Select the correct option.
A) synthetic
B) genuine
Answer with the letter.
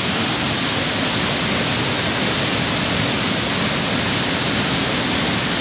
B